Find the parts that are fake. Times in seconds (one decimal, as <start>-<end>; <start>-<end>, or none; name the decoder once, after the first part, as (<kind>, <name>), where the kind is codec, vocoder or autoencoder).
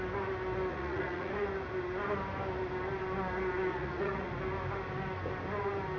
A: 0.7-1.3 (vocoder, Vocos); 3.7-4.3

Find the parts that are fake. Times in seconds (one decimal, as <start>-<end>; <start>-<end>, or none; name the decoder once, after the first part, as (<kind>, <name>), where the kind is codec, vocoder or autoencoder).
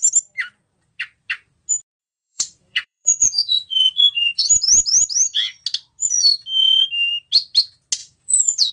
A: 2.0-4.3 (vocoder, Vocos); 8.0-8.7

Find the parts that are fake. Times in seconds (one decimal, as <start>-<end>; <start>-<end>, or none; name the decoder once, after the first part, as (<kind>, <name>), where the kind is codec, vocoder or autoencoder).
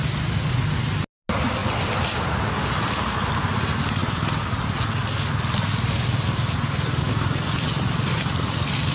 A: none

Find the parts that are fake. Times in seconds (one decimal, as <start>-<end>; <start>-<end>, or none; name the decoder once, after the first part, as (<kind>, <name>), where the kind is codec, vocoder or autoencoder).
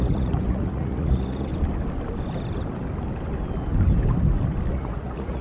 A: 0.0-1.5 (vocoder, Vocos); 4.7-5.4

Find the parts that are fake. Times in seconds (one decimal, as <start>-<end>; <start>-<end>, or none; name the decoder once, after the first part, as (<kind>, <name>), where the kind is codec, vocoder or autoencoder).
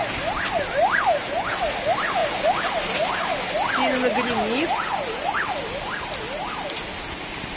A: none